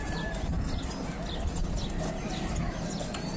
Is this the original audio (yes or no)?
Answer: yes